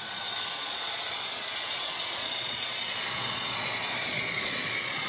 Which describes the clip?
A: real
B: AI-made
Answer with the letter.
B